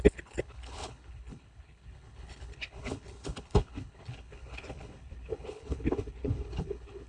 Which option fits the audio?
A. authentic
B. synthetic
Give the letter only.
B